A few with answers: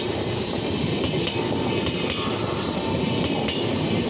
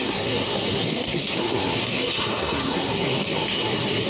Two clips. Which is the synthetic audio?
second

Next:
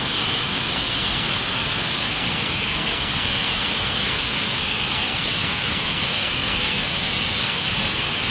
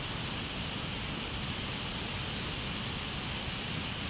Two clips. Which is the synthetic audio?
first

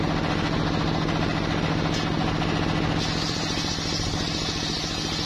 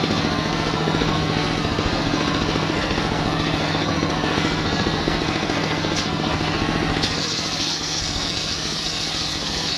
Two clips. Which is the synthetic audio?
second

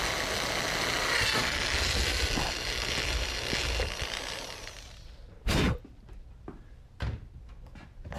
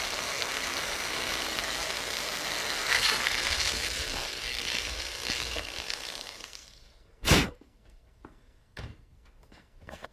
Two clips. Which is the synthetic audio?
second